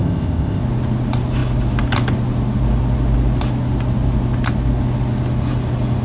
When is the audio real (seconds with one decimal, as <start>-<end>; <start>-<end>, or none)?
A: 0.6-6.0